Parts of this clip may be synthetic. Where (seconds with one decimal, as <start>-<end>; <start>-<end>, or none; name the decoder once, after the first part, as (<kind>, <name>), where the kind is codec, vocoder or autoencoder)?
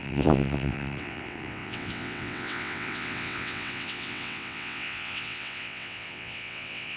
0.0-7.0 (vocoder, WaveNeXt)